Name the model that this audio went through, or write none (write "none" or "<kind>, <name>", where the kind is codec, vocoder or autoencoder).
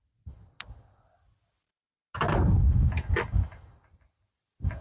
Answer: none